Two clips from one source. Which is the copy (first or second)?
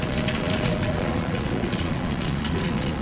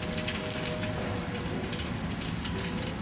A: first